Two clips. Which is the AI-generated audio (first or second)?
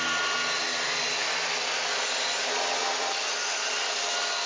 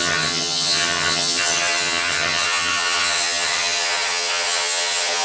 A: second